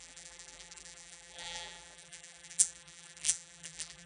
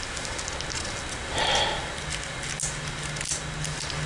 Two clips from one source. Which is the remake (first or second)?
first